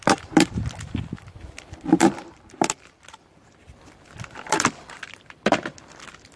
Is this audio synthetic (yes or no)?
yes